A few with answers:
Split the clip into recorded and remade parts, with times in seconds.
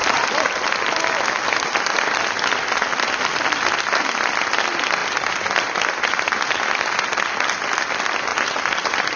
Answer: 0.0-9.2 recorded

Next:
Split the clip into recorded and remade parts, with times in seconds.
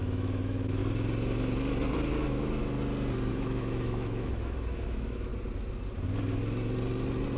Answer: 0.0-0.8 remade; 0.8-2.2 recorded; 2.2-2.6 remade; 2.6-3.3 recorded; 3.3-5.3 remade; 5.3-7.4 recorded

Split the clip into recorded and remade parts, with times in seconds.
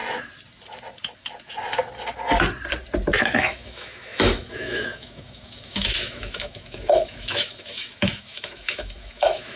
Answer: 0.0-3.2 recorded; 3.2-9.6 remade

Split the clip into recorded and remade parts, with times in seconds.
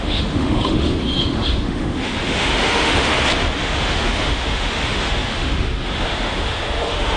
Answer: 0.0-3.1 remade; 3.1-3.6 recorded; 3.6-7.2 remade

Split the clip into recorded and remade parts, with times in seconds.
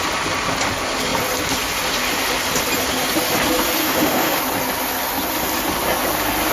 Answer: 0.0-3.8 recorded; 3.8-4.4 remade; 4.4-6.5 recorded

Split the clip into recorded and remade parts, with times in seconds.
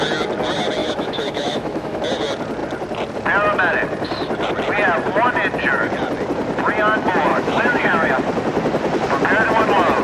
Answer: 0.0-0.8 recorded; 0.8-2.0 remade; 2.0-7.3 recorded; 7.3-8.1 remade; 8.1-10.0 recorded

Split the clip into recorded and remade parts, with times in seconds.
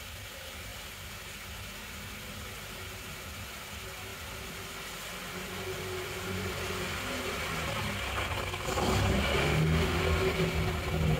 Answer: 0.0-9.4 recorded; 9.4-10.0 remade; 10.0-11.2 recorded